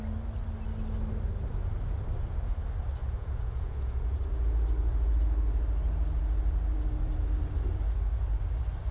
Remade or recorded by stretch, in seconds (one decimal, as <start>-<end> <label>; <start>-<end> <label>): 0.0-3.0 recorded; 3.0-4.2 remade; 4.2-8.9 recorded